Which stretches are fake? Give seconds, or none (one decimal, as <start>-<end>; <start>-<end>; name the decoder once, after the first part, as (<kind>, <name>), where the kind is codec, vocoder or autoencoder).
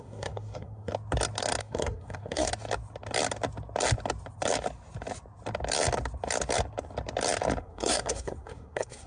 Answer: 0.0-0.9 (codec, SNAC); 1.6-2.5; 7.6-9.1